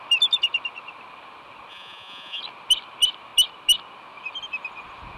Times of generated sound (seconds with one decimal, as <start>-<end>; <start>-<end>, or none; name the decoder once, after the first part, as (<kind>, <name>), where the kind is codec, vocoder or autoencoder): 1.7-2.4 (vocoder, Vocos)